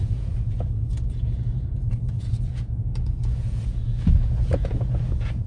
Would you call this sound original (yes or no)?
no